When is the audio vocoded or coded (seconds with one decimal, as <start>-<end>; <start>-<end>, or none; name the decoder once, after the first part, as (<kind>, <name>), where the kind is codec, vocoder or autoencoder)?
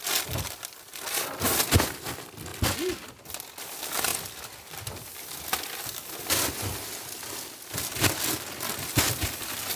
none